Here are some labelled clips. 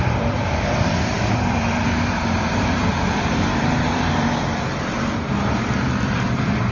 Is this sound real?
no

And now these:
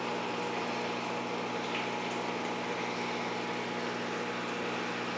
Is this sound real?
yes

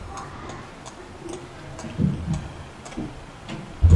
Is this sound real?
yes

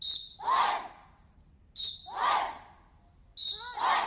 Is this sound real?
yes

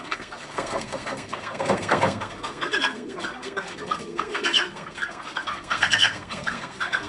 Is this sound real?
no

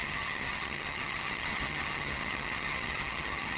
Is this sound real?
no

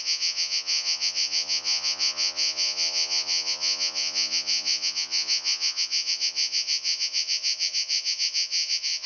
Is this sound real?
no